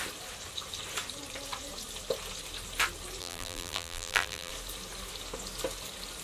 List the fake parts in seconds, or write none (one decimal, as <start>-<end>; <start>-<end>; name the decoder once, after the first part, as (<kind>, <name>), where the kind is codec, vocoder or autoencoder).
3.2-4.5 (vocoder, BigVGAN v2)